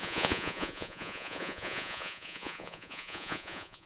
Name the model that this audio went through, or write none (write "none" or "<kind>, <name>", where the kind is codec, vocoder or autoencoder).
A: vocoder, Vocos